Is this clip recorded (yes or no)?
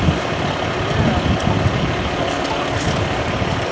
yes